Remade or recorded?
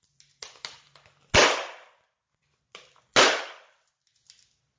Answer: recorded